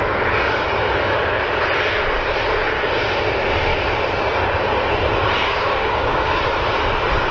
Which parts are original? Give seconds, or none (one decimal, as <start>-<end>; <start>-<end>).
0.0-5.2; 6.4-7.3